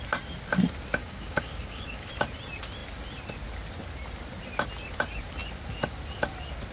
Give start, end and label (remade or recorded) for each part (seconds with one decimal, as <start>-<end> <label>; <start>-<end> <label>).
0.0-1.0 recorded; 1.0-2.1 remade; 2.1-6.7 recorded